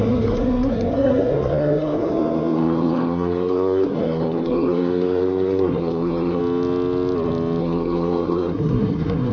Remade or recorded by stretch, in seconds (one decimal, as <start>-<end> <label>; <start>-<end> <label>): 0.0-6.4 remade; 6.4-7.6 recorded; 7.6-9.3 remade